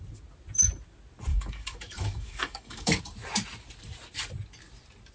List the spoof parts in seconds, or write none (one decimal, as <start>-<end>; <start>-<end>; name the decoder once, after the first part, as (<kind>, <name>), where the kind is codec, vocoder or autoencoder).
1.3-3.0 (codec, DAC)